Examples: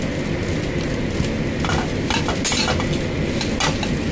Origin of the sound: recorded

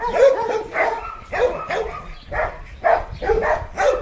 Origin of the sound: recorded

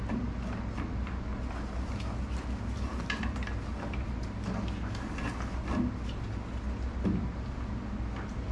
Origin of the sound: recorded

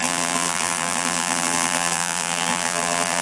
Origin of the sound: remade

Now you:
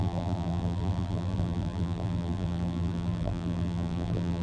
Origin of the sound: remade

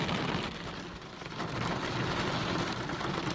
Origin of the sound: remade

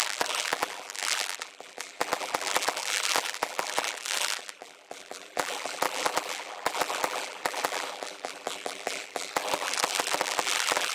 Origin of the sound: remade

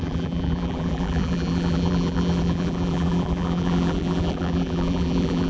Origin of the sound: remade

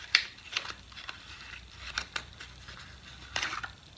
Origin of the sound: remade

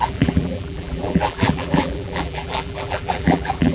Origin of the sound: remade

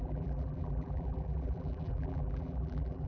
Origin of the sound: remade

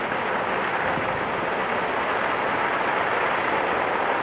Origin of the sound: recorded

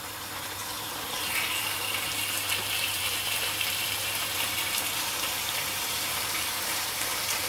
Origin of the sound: remade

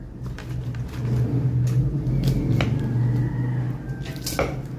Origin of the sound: recorded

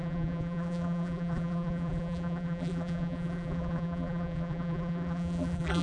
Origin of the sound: remade